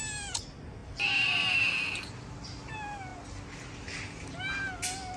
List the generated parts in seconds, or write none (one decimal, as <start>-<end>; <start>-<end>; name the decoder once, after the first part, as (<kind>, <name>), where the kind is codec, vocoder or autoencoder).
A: none